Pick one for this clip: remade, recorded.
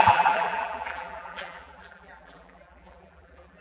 remade